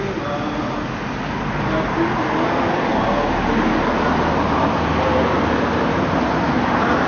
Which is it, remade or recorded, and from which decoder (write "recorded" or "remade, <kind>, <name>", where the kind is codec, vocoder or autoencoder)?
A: recorded